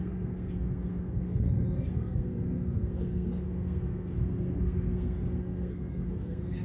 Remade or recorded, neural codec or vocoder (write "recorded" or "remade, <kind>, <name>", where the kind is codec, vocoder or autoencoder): remade, codec, SNAC